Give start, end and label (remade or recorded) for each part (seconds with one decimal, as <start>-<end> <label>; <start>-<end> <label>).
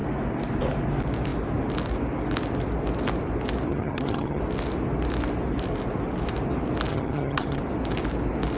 0.0-3.7 recorded; 3.7-4.4 remade; 4.4-6.9 recorded; 6.9-7.6 remade; 7.6-8.6 recorded